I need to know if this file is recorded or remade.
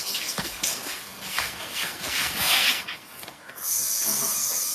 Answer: remade